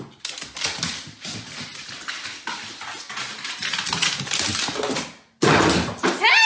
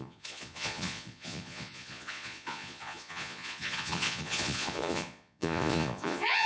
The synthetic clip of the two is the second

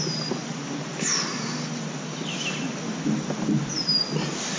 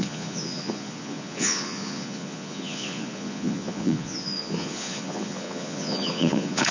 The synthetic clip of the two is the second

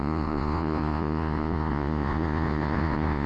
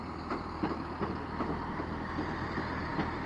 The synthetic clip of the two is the first